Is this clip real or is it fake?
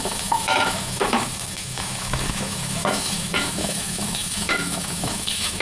fake